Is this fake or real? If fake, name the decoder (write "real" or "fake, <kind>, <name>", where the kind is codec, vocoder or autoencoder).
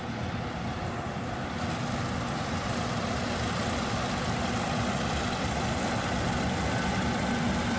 real